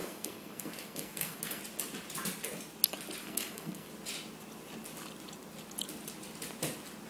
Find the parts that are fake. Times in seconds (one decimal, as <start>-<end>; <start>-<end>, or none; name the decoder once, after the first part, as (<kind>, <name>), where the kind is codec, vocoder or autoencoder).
0.0-1.6 (codec, SNAC); 3.2-3.9